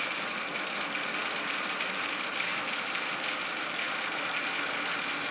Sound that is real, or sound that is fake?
real